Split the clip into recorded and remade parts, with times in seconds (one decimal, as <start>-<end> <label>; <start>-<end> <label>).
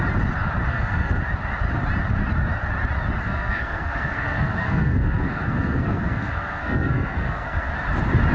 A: 0.0-0.7 recorded; 0.7-1.2 remade; 1.2-3.2 recorded; 3.2-7.7 remade; 7.7-8.3 recorded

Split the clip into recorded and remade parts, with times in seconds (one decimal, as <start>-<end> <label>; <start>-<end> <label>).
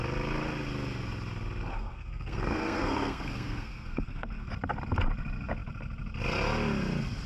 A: 0.0-1.7 recorded; 1.7-4.5 remade; 4.5-7.3 recorded